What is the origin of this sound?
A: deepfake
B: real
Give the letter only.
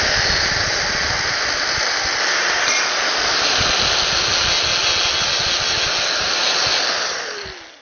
B